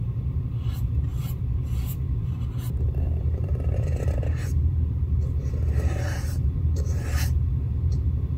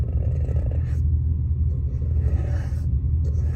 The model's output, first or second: first